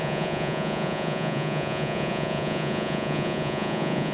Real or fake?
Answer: fake